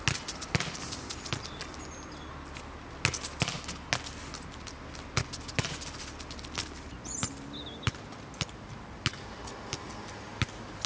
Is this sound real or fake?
real